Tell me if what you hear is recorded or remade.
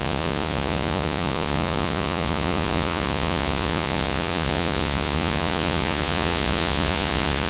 remade